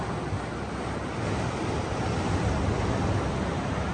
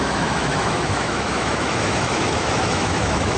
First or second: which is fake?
second